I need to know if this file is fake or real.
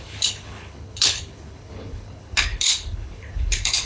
fake